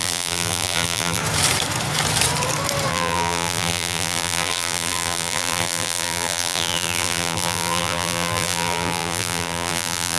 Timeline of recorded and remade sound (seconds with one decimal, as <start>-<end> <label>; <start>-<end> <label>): 0.0-1.2 remade; 1.2-2.9 recorded; 2.9-10.2 remade